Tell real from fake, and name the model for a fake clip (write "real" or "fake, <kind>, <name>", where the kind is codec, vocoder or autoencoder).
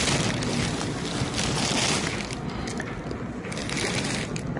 real